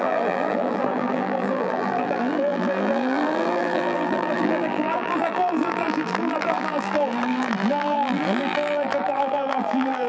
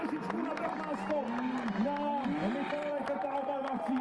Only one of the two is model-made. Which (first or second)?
first